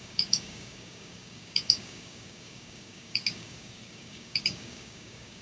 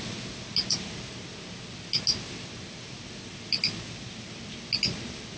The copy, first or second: first